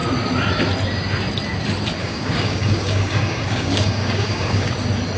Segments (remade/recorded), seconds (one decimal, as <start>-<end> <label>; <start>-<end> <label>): 0.0-2.0 recorded; 2.0-4.7 remade; 4.7-5.2 recorded